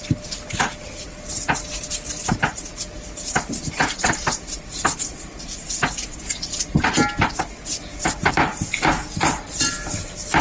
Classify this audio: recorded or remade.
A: recorded